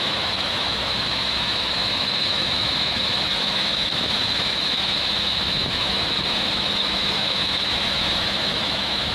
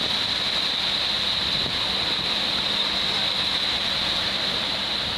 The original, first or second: second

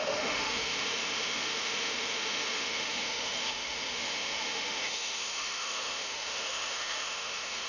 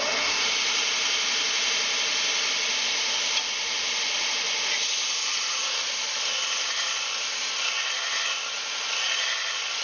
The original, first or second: second